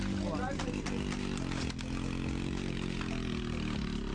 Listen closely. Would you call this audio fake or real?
real